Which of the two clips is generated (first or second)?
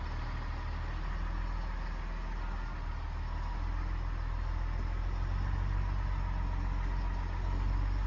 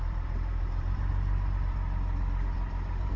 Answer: second